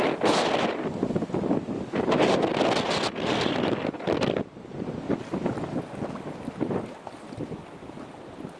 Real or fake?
real